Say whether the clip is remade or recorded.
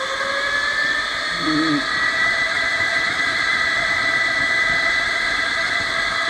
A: recorded